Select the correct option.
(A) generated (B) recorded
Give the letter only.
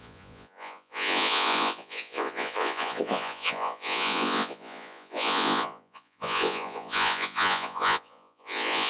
A